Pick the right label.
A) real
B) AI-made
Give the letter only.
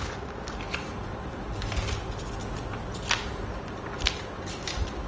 A